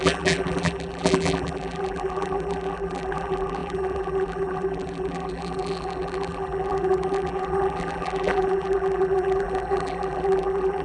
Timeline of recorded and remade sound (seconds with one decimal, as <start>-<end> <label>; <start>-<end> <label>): 0.0-10.8 remade

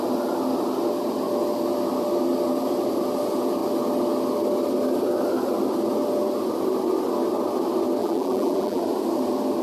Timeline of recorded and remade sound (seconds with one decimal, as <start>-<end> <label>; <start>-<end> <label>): 0.0-8.0 recorded; 8.0-8.8 remade; 8.8-9.6 recorded

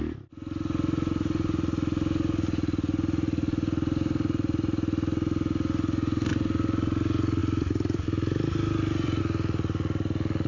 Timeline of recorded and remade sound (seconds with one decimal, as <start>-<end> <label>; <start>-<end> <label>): 0.0-7.4 recorded; 7.4-9.2 remade; 9.2-10.5 recorded

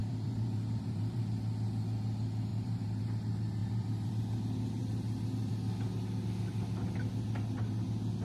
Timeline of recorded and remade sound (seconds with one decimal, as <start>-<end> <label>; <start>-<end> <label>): 0.0-1.2 remade; 1.2-2.5 recorded; 2.5-3.1 remade; 3.1-3.6 recorded; 3.6-4.1 remade; 4.1-8.2 recorded

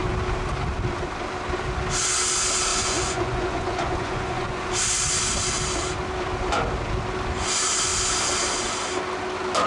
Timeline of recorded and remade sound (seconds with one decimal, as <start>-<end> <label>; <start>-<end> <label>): 0.0-2.7 recorded; 2.7-4.7 remade; 4.7-9.7 recorded

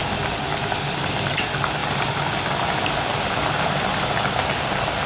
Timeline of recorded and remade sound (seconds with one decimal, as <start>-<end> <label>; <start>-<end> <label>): 0.0-5.1 recorded

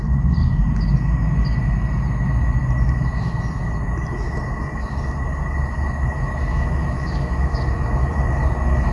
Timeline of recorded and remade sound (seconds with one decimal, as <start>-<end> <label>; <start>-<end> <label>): 0.0-6.5 recorded; 6.5-7.6 remade; 7.6-8.9 recorded

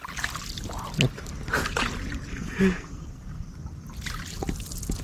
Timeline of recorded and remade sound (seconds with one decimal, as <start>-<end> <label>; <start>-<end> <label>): 0.0-2.3 recorded; 2.3-3.5 remade; 3.5-5.0 recorded